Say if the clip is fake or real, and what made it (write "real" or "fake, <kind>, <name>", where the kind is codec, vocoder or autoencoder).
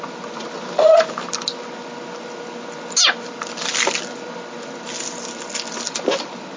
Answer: real